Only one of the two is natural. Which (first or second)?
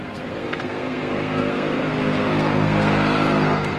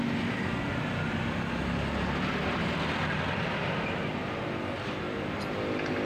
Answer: second